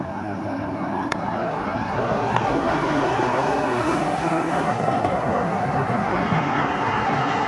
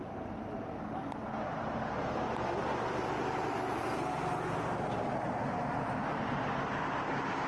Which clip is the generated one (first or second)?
first